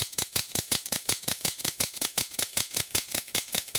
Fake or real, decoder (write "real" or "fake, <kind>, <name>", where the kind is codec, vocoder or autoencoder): fake, autoencoder, DAC-VAE